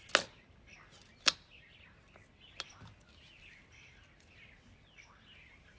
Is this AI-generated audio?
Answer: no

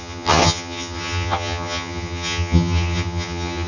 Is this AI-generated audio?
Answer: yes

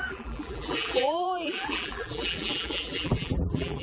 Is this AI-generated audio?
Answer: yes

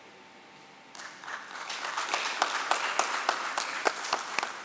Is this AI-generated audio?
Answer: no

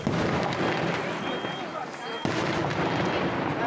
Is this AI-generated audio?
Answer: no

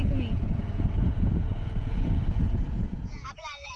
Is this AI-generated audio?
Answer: yes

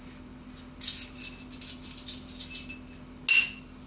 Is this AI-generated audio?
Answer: no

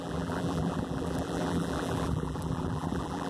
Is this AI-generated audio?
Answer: yes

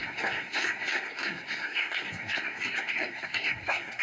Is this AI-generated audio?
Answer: yes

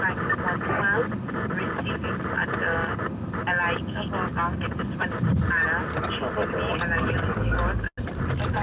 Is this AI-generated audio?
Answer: no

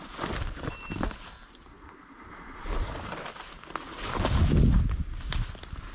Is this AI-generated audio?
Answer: no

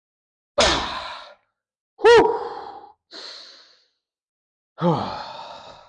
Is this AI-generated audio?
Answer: no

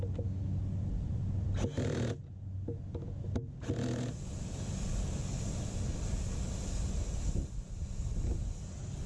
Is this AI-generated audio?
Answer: no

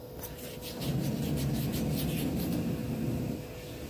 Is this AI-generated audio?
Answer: no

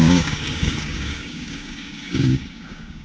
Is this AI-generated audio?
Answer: yes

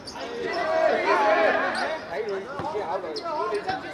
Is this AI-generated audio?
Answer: no